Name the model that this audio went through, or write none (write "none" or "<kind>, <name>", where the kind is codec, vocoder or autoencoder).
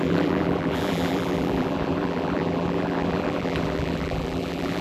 vocoder, BigVGAN v2